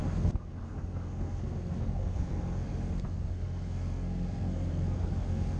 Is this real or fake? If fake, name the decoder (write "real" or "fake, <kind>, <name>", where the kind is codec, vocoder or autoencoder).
fake, codec, SNAC